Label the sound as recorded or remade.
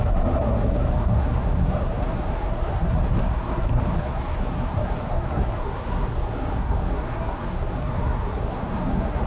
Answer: remade